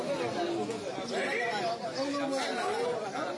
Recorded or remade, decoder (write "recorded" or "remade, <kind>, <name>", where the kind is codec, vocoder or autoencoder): recorded